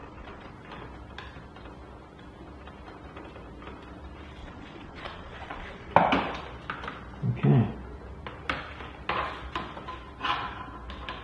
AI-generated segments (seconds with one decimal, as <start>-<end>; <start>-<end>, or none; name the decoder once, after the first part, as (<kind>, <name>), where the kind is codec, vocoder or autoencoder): 0.0-0.5 (vocoder, Vocos); 4.4-5.9